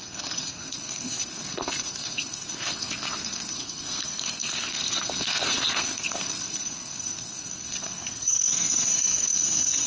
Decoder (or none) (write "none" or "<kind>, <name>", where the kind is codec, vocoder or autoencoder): codec, SNAC